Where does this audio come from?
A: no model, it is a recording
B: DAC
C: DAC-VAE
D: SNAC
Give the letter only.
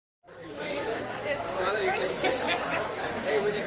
B